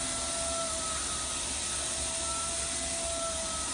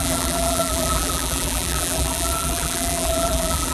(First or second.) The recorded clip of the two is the first